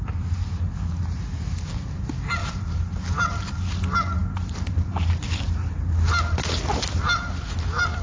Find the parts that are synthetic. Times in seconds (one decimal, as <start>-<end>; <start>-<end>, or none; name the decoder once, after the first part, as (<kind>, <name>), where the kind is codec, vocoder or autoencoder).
2.4-3.5 (vocoder, BigVGAN v2); 6.4-8.0